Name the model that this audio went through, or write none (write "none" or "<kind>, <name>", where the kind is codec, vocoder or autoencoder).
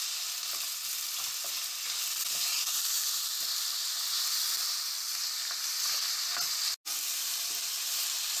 none